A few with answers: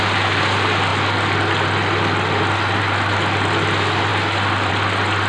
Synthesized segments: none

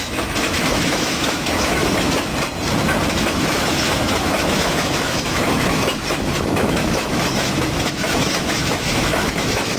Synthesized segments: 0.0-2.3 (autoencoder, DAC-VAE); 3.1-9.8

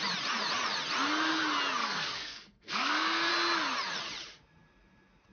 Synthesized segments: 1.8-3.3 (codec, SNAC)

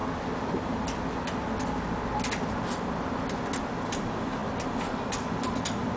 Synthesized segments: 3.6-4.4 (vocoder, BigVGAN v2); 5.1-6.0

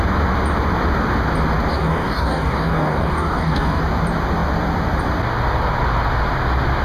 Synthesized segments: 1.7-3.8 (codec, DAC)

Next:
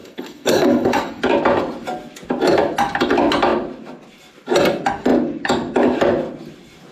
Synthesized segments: 0.0-1.2 (codec, SNAC)